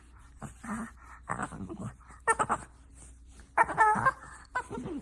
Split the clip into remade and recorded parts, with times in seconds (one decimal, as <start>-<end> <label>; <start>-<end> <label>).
0.0-5.0 recorded